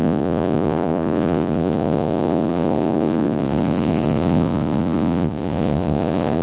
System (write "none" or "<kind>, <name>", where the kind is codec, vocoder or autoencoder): vocoder, Vocos